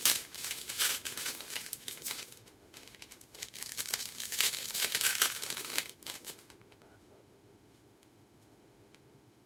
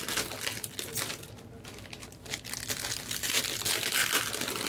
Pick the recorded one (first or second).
second